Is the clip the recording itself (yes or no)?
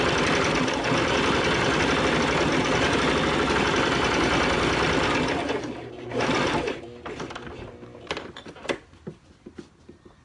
yes